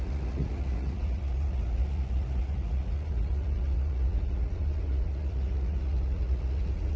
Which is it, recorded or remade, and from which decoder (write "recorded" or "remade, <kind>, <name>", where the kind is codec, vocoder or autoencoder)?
remade, vocoder, Vocos